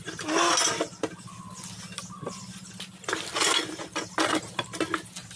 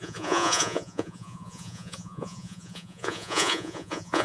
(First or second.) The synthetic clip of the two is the second